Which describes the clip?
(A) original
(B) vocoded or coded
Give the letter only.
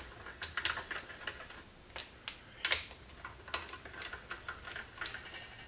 A